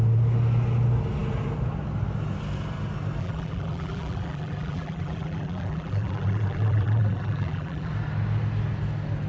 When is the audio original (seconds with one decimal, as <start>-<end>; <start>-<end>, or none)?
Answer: 0.0-3.2; 7.9-9.3